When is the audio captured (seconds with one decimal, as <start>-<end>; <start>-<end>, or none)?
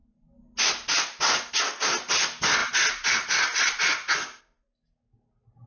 0.0-5.7